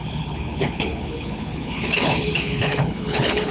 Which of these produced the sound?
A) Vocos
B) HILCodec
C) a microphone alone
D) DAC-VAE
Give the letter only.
B